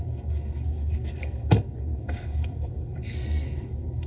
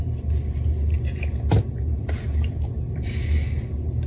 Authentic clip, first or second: second